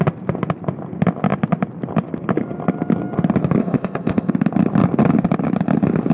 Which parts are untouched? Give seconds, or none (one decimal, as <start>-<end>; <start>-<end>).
0.0-3.6; 4.3-6.1